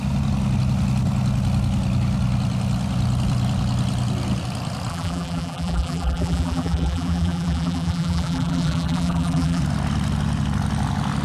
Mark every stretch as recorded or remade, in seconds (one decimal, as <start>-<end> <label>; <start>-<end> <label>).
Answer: 0.0-4.9 recorded; 4.9-9.6 remade; 9.6-11.2 recorded